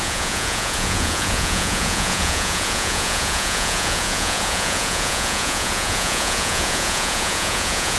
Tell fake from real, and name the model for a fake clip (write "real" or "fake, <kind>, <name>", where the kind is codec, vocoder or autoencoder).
fake, vocoder, Vocos